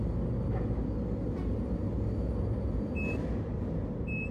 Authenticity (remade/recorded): recorded